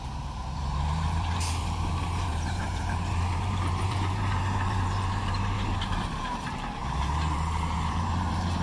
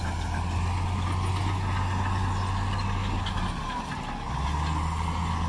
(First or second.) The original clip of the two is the second